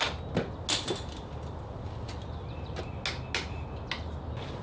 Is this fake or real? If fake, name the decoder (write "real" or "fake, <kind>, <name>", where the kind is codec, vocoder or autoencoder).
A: real